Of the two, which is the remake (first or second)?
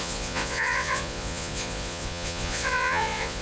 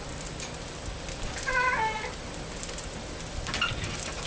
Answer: first